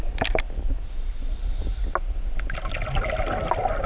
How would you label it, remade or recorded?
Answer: recorded